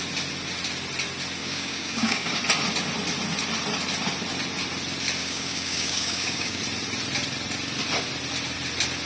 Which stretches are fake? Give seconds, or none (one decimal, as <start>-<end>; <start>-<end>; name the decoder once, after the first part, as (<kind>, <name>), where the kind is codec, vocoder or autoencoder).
1.4-2.4 (codec, DAC); 5.2-6.6